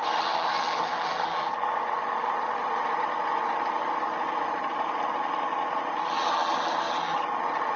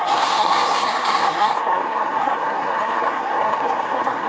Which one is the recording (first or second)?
first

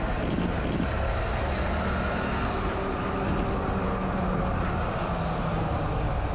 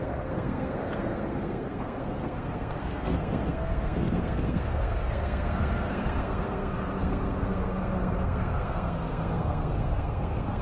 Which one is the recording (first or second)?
first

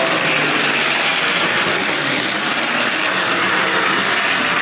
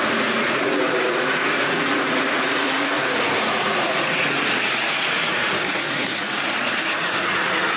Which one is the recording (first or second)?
first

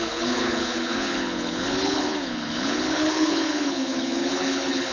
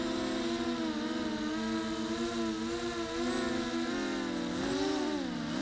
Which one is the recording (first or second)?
second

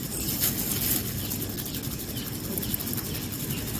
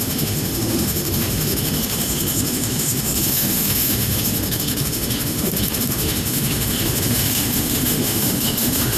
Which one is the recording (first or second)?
first